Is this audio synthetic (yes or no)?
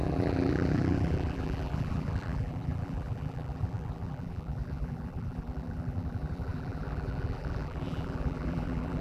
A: yes